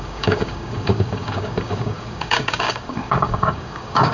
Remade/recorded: remade